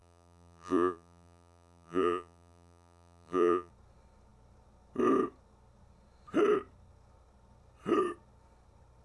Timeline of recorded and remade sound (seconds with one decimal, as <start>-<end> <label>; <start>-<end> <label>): 0.0-3.7 remade; 3.7-9.0 recorded